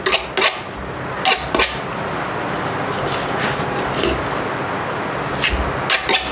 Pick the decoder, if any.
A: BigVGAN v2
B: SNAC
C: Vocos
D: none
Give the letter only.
D